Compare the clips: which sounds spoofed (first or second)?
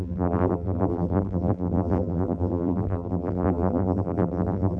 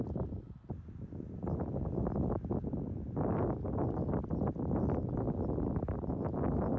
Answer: first